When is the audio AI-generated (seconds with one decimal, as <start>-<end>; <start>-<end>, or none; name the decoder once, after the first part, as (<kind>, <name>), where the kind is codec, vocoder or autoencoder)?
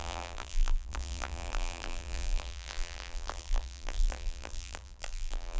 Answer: 0.0-5.6 (vocoder, BigVGAN v2)